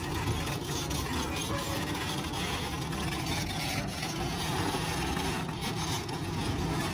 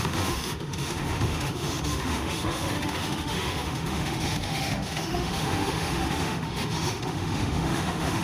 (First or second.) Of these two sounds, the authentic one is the first